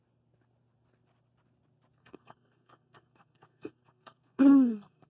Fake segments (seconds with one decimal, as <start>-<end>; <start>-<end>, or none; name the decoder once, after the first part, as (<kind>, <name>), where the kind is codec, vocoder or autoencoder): 2.0-5.1 (codec, SNAC)